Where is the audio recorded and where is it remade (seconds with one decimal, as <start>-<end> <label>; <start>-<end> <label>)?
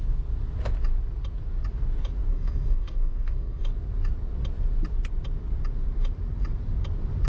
0.0-2.3 recorded; 2.3-3.6 remade; 3.6-7.3 recorded